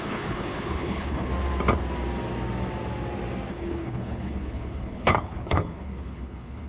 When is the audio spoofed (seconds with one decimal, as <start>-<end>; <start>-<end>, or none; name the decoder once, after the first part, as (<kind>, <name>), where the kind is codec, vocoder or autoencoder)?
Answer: 0.0-1.3 (codec, HILCodec); 3.5-6.7